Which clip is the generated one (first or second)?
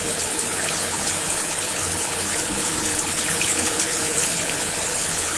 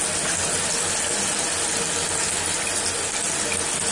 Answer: first